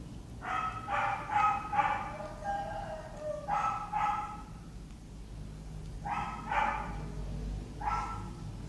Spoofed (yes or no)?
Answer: no